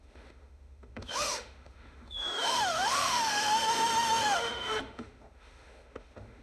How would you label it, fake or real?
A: fake